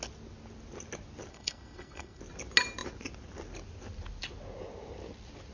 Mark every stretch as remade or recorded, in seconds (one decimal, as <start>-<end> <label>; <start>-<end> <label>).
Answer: 0.0-1.3 recorded; 1.3-2.2 remade; 2.2-5.5 recorded